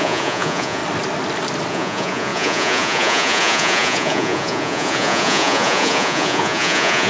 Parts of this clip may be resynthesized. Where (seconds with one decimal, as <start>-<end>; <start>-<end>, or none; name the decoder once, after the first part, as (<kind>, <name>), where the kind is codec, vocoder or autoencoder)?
0.0-0.8 (vocoder, Vocos); 1.7-7.1